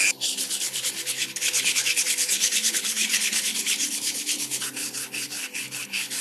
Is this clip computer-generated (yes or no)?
yes